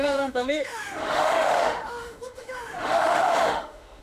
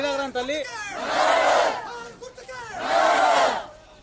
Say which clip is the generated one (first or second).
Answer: first